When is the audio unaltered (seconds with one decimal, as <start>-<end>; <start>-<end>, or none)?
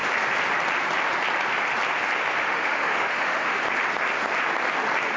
0.0-2.4; 3.6-5.2